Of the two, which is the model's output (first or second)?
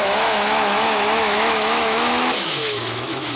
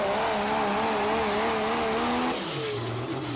first